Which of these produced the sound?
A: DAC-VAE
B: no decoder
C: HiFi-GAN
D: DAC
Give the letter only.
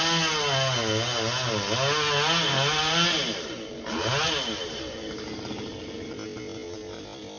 B